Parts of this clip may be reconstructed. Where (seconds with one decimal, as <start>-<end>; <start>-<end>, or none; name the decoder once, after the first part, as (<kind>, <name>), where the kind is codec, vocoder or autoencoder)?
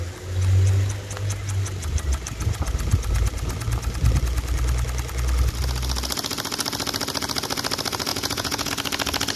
8.1-8.7 (vocoder, Vocos)